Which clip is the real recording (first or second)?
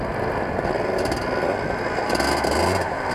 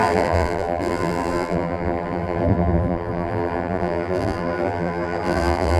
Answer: first